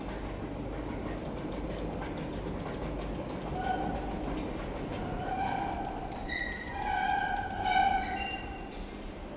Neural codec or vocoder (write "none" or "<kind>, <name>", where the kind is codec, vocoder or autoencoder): none